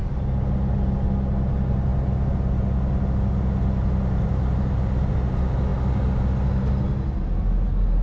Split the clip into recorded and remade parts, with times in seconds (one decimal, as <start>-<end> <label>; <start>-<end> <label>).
0.0-8.0 recorded